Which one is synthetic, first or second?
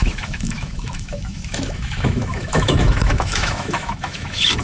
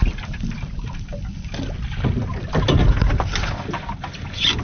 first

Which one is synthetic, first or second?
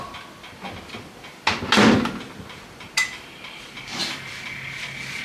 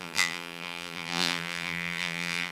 second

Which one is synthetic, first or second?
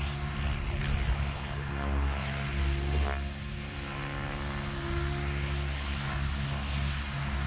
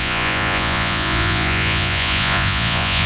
second